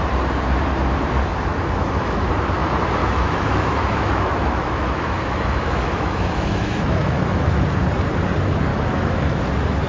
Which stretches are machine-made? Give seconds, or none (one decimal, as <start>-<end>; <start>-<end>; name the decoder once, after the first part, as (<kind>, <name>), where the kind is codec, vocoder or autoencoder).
1.5-2.3 (autoencoder, DAC-VAE); 3.0-7.6; 8.7-9.4